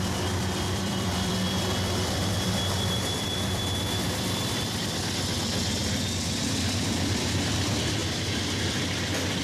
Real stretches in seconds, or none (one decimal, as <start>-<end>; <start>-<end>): 8.0-9.4